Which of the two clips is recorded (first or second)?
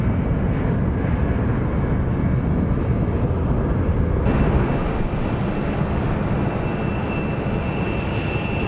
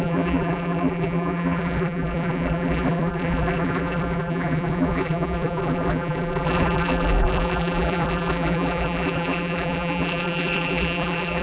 first